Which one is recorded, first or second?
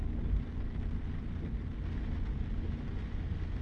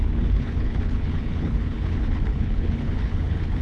first